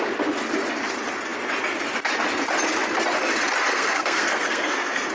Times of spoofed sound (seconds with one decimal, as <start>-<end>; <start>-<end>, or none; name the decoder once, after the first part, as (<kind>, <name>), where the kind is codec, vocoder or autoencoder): 3.7-5.1 (codec, SNAC)